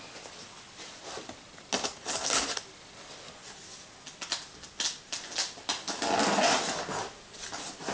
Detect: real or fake real